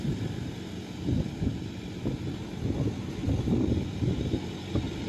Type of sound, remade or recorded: recorded